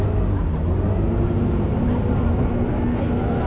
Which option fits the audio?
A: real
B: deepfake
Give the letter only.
A